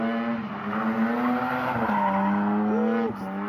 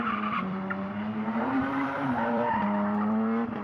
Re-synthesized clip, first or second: second